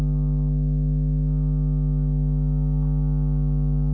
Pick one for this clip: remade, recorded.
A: recorded